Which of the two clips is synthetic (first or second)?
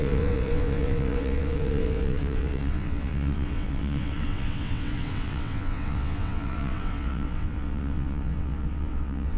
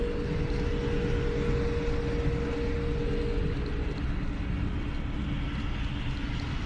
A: first